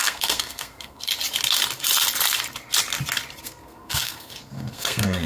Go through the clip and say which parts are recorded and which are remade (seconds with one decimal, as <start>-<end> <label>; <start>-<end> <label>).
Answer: 0.0-1.1 remade; 1.1-3.4 recorded; 3.4-5.3 remade